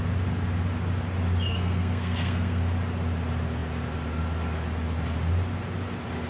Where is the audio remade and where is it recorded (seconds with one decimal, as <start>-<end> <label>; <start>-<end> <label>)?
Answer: 0.0-1.5 recorded; 1.5-2.6 remade; 2.6-6.3 recorded